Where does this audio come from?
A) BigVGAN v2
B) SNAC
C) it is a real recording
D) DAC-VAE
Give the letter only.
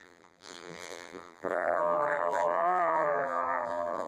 A